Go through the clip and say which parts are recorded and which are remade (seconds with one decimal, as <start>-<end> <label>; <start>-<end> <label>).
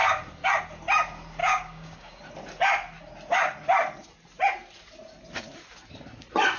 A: 0.0-1.4 recorded; 1.4-2.2 remade; 2.2-6.6 recorded